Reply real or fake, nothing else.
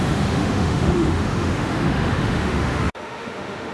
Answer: fake